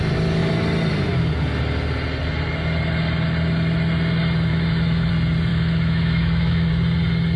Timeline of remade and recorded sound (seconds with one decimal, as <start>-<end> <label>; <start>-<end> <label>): 0.0-4.5 recorded; 4.5-5.1 remade; 5.1-5.5 recorded; 5.5-6.7 remade; 6.7-7.4 recorded